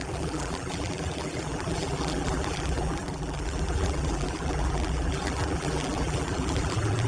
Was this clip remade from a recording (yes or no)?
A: yes